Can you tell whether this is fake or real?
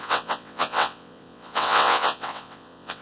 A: fake